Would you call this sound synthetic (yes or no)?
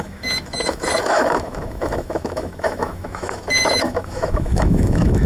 yes